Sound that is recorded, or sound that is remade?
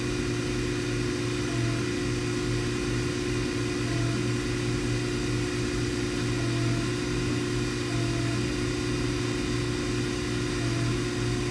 recorded